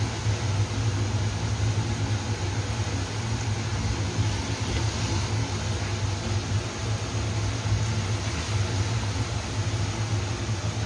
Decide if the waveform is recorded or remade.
recorded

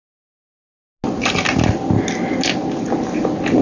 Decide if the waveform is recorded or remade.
recorded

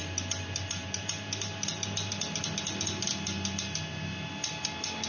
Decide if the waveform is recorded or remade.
recorded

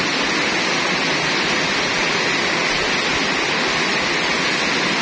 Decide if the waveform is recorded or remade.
recorded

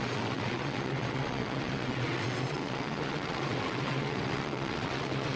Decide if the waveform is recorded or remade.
remade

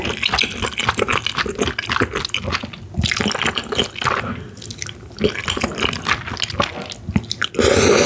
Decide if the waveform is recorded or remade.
recorded